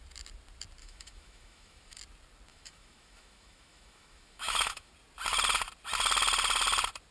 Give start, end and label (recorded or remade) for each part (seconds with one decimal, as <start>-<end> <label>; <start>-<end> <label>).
0.0-0.8 recorded; 0.8-2.0 remade; 2.0-2.5 recorded; 2.5-4.9 remade; 4.9-7.1 recorded